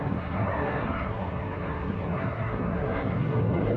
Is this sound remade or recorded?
remade